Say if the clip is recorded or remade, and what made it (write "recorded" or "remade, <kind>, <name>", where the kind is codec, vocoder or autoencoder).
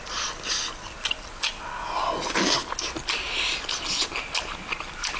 recorded